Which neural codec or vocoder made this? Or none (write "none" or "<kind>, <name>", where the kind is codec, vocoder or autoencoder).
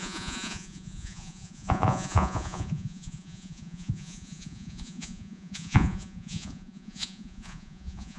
vocoder, Vocos